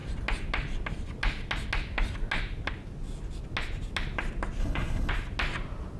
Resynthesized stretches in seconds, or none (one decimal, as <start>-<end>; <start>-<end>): 4.6-5.1